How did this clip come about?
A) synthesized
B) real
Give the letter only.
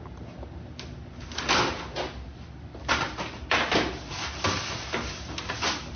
B